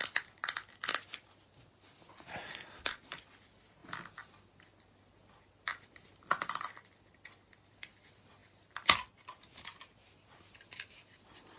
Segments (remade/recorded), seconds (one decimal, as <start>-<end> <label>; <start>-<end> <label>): 0.0-11.6 recorded